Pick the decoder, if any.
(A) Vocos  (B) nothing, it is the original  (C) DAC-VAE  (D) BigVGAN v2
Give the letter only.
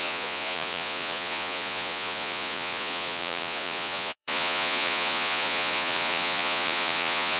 A